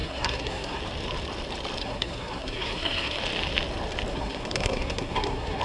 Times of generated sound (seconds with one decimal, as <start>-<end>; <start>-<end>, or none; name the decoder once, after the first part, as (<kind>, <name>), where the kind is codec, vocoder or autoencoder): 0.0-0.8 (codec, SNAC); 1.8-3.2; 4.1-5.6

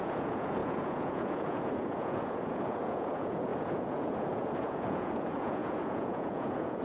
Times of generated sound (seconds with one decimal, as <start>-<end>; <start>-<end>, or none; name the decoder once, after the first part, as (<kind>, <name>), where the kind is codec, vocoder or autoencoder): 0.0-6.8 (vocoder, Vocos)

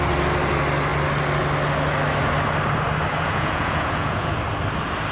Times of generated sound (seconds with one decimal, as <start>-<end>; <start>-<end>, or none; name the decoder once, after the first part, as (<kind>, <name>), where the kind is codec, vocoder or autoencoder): 3.1-4.4 (vocoder, Vocos)

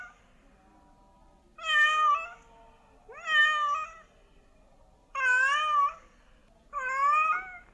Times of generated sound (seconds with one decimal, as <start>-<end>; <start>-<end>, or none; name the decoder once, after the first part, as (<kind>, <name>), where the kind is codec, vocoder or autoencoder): none

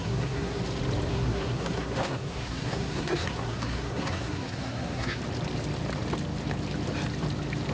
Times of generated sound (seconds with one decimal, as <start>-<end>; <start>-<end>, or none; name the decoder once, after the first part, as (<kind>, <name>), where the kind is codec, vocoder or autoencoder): 0.0-0.6 (codec, SNAC); 1.1-5.2

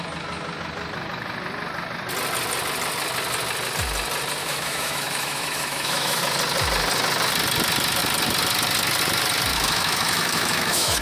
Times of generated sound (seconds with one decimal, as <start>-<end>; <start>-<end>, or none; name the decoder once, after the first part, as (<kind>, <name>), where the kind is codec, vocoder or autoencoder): 4.4-6.2 (autoencoder, DAC-VAE); 9.5-11.0